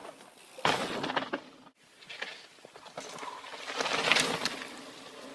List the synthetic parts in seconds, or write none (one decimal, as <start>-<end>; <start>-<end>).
0.0-1.3